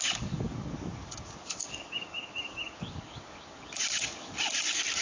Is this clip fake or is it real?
fake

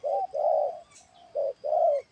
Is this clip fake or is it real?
real